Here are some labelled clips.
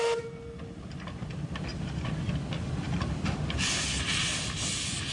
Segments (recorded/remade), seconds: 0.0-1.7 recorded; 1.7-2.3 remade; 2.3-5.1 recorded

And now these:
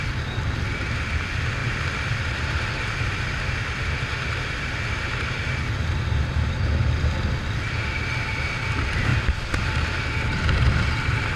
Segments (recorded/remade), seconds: 0.0-11.4 recorded

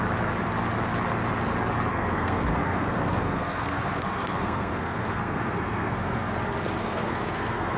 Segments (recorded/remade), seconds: 0.0-1.9 recorded; 1.9-6.3 remade; 6.3-6.8 recorded; 6.8-7.8 remade

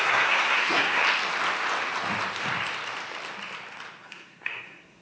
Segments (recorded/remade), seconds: 0.0-1.0 remade; 1.0-4.0 recorded; 4.0-5.0 remade

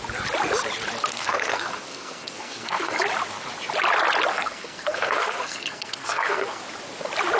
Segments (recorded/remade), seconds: 0.0-1.1 recorded; 1.1-3.0 remade; 3.0-4.3 recorded; 4.3-6.6 remade; 6.6-7.4 recorded

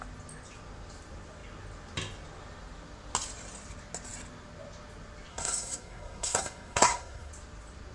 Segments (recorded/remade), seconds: 0.0-5.3 recorded; 5.3-7.3 remade; 7.3-7.9 recorded

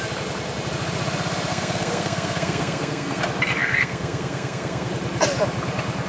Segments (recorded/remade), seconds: 0.0-1.5 recorded; 1.5-3.2 remade; 3.2-3.6 recorded; 3.6-4.9 remade; 4.9-6.1 recorded